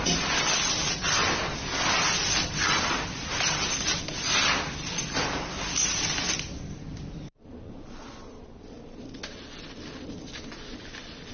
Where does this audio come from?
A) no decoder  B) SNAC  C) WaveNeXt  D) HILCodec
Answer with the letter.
A